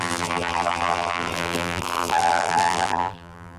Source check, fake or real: fake